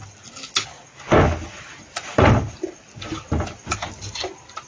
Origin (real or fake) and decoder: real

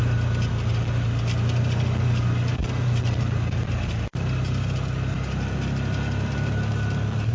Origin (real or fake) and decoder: real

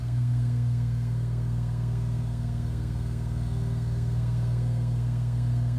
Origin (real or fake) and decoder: fake, codec, SNAC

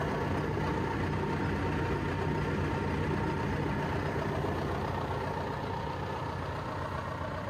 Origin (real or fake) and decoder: real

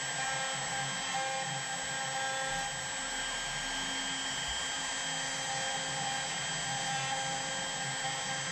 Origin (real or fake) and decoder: real